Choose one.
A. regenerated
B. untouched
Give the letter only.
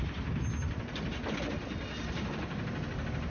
B